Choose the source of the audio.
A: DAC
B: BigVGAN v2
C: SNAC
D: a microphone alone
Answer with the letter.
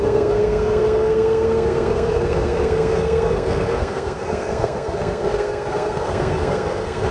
C